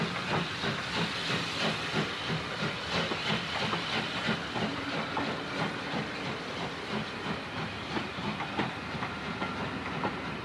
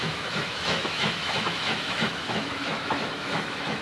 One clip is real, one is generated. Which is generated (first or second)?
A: second